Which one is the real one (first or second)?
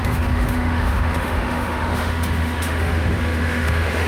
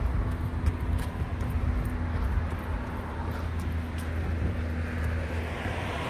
second